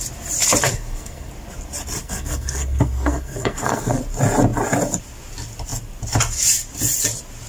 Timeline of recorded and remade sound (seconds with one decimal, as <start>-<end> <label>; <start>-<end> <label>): 0.0-0.7 recorded; 0.7-1.3 remade; 1.3-2.0 recorded; 2.0-4.0 remade; 4.0-7.5 recorded